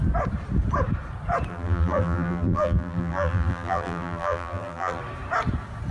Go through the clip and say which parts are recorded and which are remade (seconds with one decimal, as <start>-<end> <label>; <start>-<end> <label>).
0.0-1.5 recorded; 1.5-5.0 remade; 5.0-5.9 recorded